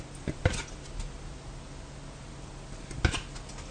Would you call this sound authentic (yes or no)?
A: yes